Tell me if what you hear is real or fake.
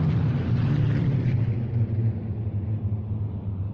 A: real